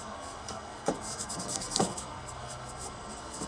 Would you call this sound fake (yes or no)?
yes